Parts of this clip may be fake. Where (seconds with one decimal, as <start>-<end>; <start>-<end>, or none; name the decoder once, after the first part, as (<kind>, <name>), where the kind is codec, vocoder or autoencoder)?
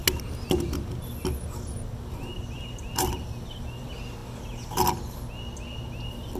none